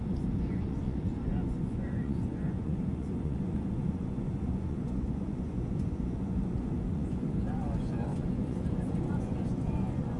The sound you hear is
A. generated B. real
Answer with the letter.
A